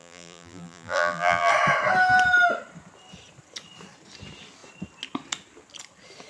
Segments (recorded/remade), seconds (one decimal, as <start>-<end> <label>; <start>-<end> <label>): 0.0-1.5 remade; 1.5-6.3 recorded

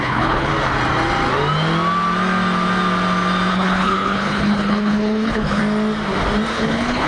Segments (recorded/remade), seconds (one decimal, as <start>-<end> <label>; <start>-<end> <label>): 0.0-0.5 remade; 0.5-3.5 recorded; 3.5-5.6 remade; 5.6-6.5 recorded; 6.5-7.1 remade